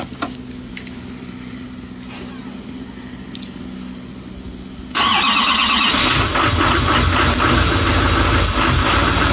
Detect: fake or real real